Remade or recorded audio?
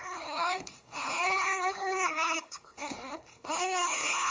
remade